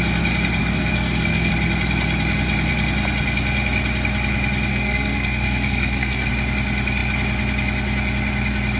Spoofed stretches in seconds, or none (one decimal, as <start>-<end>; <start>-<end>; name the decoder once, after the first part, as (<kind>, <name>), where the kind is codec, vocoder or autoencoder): 0.6-1.5 (codec, SNAC); 4.7-6.3